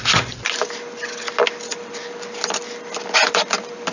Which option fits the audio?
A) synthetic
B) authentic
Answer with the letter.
B